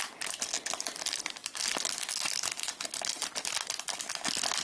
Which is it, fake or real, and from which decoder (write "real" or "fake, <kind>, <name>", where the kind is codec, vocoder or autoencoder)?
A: real